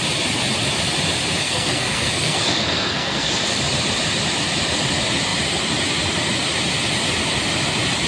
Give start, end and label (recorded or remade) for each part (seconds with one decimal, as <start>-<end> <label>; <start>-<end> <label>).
0.0-1.4 recorded; 1.4-3.6 remade; 3.6-8.1 recorded